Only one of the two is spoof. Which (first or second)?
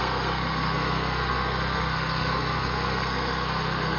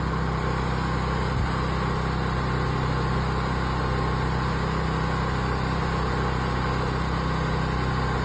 first